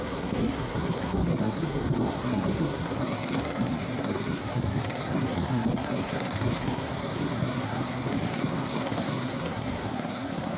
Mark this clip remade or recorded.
remade